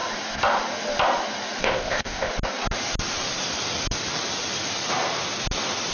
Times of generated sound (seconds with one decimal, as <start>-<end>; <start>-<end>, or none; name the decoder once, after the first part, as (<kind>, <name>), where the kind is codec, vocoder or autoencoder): 1.6-2.3 (codec, ZipCodec)